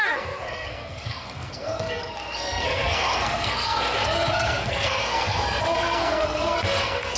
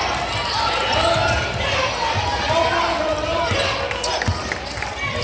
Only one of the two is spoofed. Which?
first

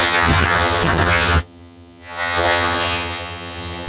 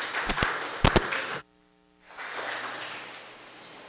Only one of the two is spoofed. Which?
first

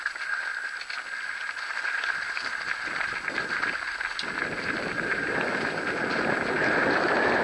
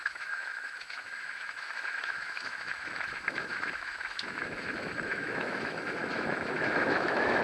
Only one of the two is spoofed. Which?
second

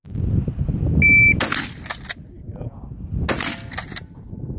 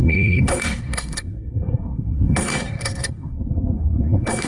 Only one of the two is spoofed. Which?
second